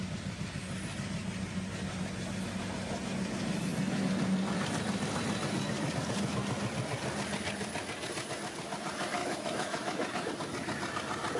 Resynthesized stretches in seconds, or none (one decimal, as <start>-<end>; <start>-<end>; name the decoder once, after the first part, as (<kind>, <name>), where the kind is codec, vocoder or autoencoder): 9.2-10.3 (autoencoder, DAC-VAE)